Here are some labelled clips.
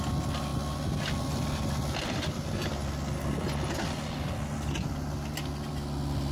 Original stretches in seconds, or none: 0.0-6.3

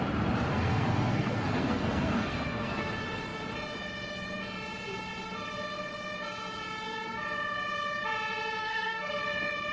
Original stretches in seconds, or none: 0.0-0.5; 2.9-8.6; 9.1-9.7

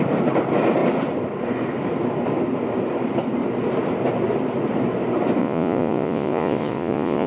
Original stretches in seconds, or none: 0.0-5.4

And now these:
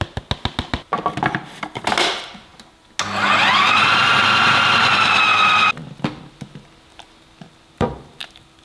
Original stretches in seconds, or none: 0.0-8.6

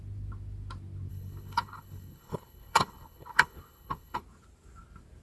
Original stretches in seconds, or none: 0.0-1.1; 4.2-5.2

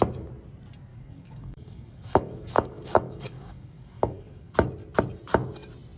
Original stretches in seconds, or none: 0.0-0.9; 4.5-6.0

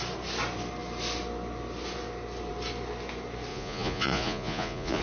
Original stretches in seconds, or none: 0.0-3.5

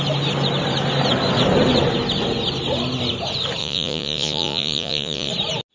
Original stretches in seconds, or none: 0.0-3.6; 5.3-5.7